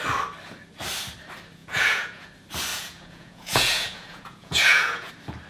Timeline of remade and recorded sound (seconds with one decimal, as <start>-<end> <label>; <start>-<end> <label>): 0.0-1.6 recorded; 1.6-2.3 remade; 2.3-2.7 recorded; 2.7-5.1 remade; 5.1-5.5 recorded